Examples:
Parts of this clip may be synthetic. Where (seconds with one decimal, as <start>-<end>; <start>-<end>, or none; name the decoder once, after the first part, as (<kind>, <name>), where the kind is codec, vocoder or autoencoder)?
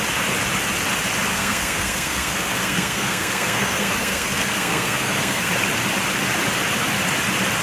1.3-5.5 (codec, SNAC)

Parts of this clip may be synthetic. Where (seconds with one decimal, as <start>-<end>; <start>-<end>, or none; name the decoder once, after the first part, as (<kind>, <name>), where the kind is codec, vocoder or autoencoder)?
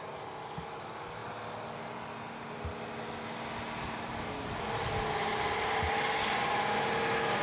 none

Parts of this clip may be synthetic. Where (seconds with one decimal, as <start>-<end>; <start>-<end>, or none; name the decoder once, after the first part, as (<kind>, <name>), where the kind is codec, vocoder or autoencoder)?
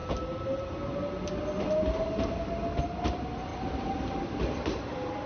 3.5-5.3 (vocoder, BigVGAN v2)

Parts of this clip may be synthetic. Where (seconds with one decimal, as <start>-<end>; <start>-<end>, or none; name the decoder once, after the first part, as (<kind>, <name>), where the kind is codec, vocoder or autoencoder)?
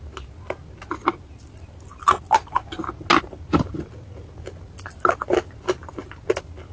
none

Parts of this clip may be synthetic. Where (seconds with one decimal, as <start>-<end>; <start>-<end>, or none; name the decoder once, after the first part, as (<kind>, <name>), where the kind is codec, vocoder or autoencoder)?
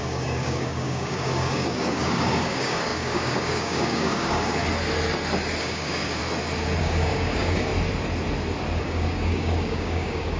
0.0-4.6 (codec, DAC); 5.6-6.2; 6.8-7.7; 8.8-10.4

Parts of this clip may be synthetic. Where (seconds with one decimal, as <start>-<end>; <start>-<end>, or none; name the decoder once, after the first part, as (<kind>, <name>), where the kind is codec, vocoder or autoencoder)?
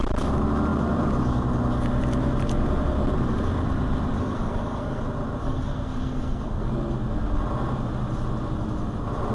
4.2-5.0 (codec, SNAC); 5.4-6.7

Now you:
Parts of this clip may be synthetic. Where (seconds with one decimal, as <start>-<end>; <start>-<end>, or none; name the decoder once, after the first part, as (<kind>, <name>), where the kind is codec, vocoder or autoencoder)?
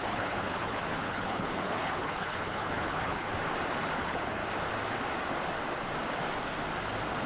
0.0-3.3 (codec, HILCodec); 4.0-4.4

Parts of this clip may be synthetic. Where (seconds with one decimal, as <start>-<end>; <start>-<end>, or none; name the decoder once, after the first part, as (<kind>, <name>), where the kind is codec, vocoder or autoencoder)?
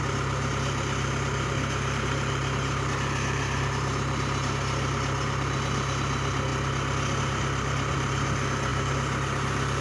0.0-6.5 (vocoder, BigVGAN v2); 7.2-9.8